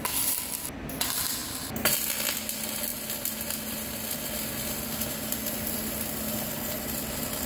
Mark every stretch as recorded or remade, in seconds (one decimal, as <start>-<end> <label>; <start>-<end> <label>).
0.0-7.5 recorded